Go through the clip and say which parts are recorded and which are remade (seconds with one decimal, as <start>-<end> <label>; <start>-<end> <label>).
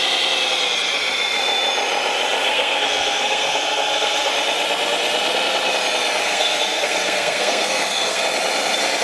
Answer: 0.0-2.5 recorded; 2.5-4.3 remade; 4.3-6.2 recorded; 6.2-8.2 remade; 8.2-9.0 recorded